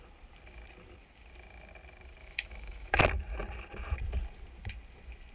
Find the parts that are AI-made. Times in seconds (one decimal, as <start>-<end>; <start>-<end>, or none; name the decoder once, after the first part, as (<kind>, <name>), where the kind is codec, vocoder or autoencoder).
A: 2.2-3.0 (autoencoder, DAC-VAE)